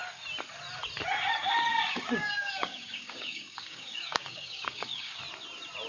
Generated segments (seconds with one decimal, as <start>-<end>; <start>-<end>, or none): 1.7-5.2